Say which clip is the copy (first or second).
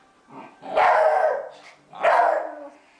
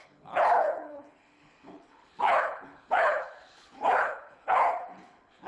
second